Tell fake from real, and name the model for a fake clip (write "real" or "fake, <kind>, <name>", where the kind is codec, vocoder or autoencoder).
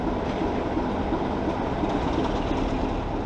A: real